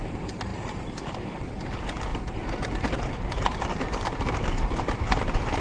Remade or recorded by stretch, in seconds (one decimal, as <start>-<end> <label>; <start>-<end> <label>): 0.0-0.5 remade; 0.5-1.0 recorded; 1.0-5.6 remade